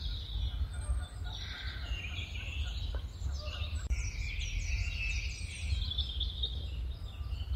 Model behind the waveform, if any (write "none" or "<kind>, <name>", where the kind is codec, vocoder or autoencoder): none